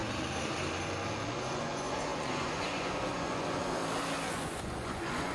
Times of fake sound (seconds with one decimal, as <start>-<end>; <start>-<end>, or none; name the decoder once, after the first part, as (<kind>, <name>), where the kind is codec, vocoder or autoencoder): 1.3-3.8 (vocoder, Vocos); 4.3-5.3